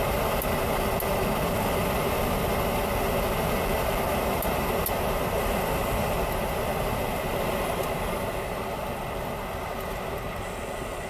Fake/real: real